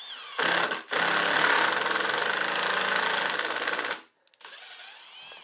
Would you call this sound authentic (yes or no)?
yes